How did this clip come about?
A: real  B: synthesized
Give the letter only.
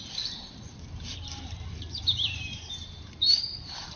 B